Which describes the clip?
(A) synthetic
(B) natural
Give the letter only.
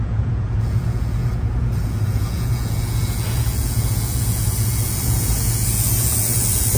A